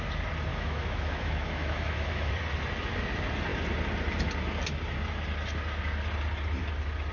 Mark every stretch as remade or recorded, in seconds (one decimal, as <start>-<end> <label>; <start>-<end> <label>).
0.0-0.5 recorded; 0.5-2.3 remade; 2.3-7.1 recorded